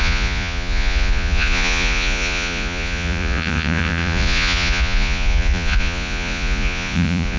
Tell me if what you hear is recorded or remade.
remade